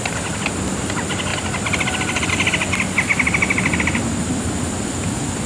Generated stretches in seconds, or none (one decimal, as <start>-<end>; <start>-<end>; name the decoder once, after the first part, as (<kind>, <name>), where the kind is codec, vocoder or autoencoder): none